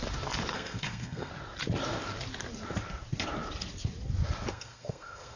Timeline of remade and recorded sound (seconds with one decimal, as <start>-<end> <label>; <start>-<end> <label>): 0.0-0.5 recorded; 0.5-1.3 remade; 1.3-4.5 recorded; 4.5-5.4 remade